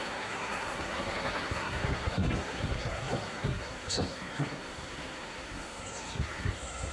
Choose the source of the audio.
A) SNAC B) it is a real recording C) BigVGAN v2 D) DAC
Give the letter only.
A